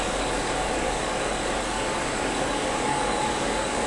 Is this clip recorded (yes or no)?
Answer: no